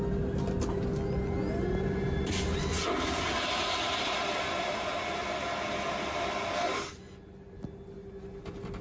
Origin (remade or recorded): recorded